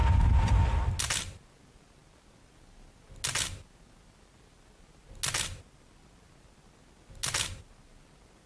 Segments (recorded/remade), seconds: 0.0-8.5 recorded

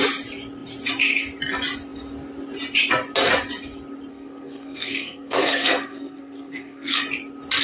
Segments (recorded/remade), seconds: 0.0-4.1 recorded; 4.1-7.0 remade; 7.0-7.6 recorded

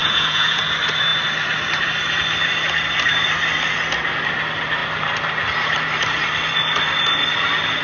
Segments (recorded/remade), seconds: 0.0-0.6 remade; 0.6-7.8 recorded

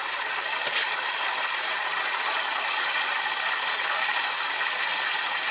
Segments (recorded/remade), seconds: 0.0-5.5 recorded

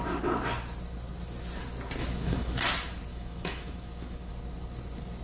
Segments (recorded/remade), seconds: 0.0-2.0 recorded; 2.0-2.6 remade; 2.6-3.1 recorded; 3.1-4.3 remade; 4.3-5.2 recorded

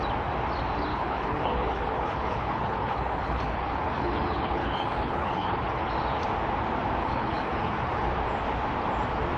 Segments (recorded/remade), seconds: 0.0-0.9 recorded; 0.9-5.9 remade; 5.9-7.0 recorded; 7.0-8.1 remade; 8.1-9.4 recorded

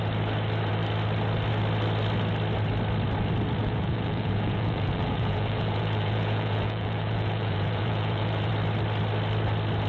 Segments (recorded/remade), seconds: 0.0-3.6 recorded; 3.6-8.5 remade; 8.5-9.9 recorded